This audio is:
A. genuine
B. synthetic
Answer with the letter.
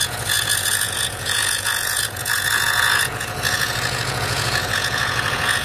B